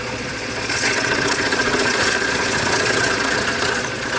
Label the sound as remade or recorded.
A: remade